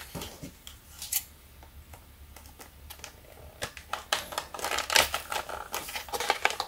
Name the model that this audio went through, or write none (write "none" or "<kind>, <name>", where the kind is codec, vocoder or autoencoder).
none